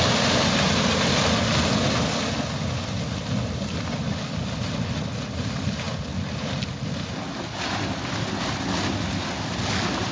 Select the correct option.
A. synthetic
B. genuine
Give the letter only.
B